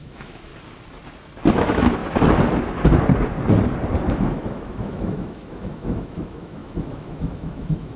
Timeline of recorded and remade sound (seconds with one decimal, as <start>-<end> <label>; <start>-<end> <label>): 0.0-0.5 remade; 0.5-1.5 recorded; 1.5-2.0 remade; 2.0-4.1 recorded; 4.1-8.0 remade